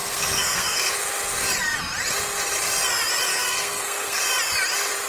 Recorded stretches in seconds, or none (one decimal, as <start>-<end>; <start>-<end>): 0.9-3.3; 4.2-5.1